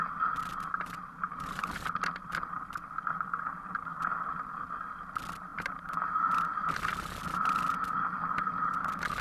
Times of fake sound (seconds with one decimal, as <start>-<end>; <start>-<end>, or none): 0.7-1.7; 5.5-6.7